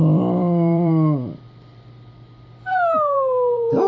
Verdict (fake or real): fake